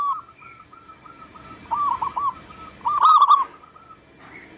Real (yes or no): yes